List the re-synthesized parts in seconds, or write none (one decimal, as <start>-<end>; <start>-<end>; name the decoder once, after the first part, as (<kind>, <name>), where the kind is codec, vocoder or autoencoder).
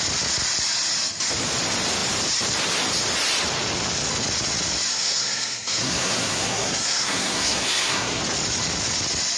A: 4.9-8.2 (codec, SNAC)